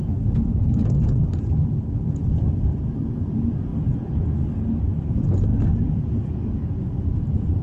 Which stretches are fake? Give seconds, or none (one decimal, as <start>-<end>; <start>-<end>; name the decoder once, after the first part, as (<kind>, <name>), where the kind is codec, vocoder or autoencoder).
0.0-1.2 (vocoder, Vocos); 2.1-3.7; 4.8-7.6